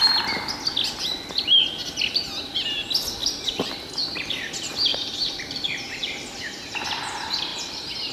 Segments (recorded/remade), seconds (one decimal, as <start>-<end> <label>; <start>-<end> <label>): 0.0-3.2 recorded; 3.2-3.9 remade; 3.9-4.9 recorded; 4.9-6.2 remade; 6.2-7.5 recorded; 7.5-8.1 remade